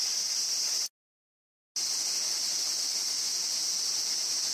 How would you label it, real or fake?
real